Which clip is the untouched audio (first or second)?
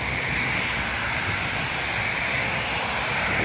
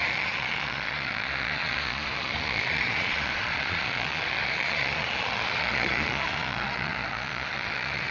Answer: first